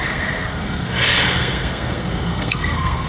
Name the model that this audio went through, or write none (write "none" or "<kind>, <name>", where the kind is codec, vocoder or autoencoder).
codec, SNAC